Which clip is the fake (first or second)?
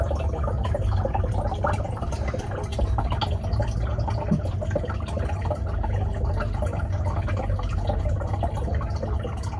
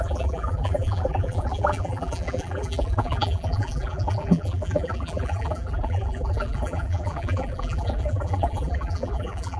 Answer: second